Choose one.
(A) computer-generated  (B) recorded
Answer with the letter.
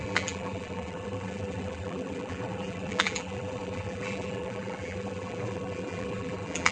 A